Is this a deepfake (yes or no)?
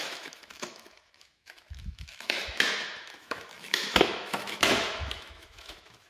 yes